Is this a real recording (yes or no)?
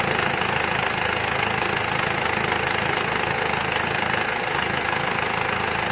yes